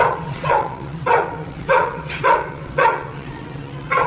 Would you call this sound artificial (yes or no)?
yes